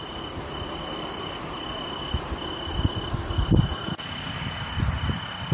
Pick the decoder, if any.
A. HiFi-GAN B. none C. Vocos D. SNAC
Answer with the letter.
B